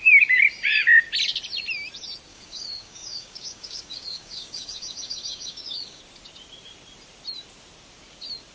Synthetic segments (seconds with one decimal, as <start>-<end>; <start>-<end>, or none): 2.3-6.0